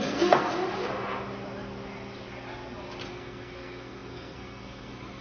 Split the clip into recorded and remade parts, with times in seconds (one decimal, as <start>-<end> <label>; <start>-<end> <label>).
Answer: 0.0-0.5 remade; 0.5-3.1 recorded; 3.1-5.2 remade